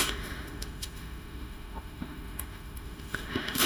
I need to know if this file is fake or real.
fake